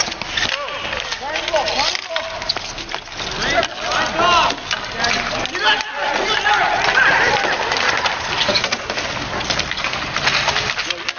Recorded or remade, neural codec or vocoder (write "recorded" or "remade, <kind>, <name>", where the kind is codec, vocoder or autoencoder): recorded